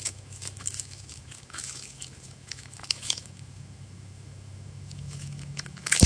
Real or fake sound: fake